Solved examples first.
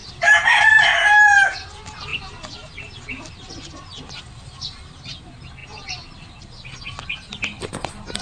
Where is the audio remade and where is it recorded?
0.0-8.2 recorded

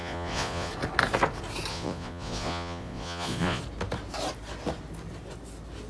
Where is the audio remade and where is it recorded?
0.0-0.7 remade; 0.7-1.7 recorded; 1.7-3.6 remade; 3.6-5.9 recorded